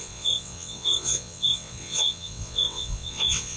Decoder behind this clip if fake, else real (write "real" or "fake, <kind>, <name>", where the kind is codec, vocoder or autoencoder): fake, vocoder, WaveNeXt